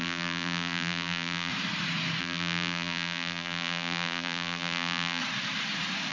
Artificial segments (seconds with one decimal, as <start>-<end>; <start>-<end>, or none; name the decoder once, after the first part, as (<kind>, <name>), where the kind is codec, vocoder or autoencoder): 0.0-1.5 (vocoder, BigVGAN v2); 2.2-5.2